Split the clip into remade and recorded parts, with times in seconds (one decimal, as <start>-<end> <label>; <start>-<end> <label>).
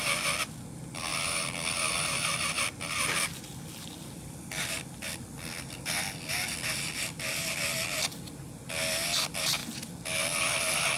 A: 0.0-11.0 recorded